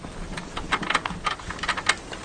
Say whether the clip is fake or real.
real